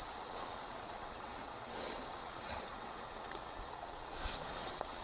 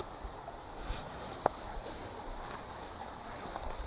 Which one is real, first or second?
second